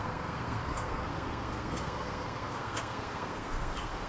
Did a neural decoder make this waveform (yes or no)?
yes